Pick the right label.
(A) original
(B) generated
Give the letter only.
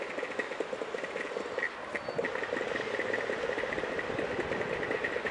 A